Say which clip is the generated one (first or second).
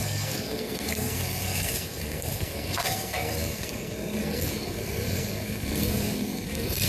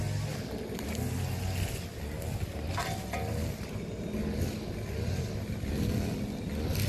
first